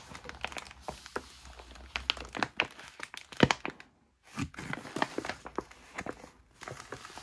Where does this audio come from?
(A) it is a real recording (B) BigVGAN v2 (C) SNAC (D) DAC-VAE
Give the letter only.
A